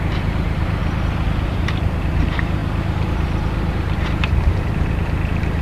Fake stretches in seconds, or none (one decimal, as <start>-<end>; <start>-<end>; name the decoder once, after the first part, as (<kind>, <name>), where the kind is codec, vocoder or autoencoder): 0.0-0.8 (vocoder, BigVGAN v2); 1.5-5.6